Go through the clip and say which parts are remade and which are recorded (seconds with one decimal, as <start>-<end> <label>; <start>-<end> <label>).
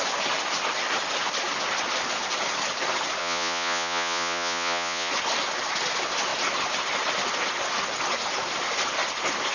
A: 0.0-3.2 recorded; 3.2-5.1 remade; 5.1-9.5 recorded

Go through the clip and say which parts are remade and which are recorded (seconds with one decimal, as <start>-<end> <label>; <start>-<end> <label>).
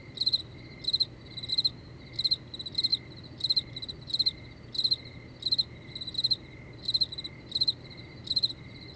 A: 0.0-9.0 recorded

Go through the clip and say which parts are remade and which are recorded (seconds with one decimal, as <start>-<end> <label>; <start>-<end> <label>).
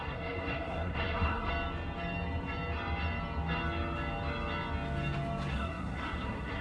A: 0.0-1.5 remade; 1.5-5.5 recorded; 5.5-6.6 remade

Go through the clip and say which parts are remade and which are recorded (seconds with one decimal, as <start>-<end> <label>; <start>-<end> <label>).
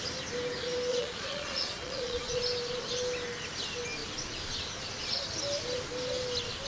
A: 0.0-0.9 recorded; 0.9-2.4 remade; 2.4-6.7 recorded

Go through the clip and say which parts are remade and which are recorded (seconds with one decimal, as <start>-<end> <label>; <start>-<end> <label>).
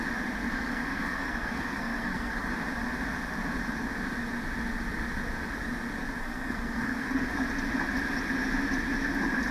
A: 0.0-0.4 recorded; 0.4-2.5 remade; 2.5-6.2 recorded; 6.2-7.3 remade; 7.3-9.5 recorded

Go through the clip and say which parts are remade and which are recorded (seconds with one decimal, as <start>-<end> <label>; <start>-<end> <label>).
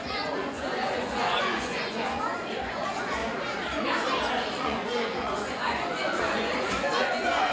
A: 0.0-3.2 remade; 3.2-4.3 recorded; 4.3-7.5 remade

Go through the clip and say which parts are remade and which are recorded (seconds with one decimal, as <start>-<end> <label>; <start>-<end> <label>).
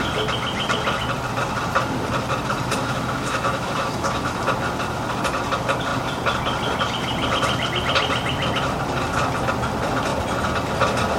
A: 0.0-2.8 recorded; 2.8-4.4 remade; 4.4-11.2 recorded